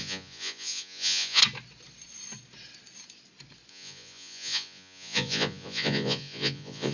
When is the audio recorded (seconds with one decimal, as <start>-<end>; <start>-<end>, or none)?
1.4-3.7